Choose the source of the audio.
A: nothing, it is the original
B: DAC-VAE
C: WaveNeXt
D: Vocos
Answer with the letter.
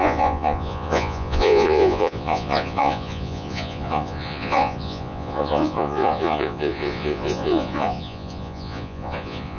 D